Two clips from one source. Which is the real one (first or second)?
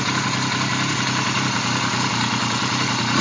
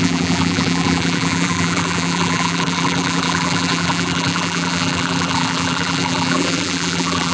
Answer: first